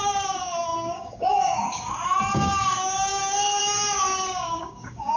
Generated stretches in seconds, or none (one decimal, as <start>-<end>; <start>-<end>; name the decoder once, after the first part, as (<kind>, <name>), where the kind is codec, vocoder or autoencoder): 0.0-5.2 (codec, DAC)